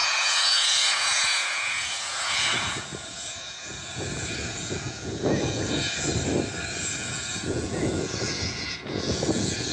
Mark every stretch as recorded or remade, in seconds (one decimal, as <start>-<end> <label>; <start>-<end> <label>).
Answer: 0.0-6.1 remade; 6.1-6.8 recorded; 6.8-9.7 remade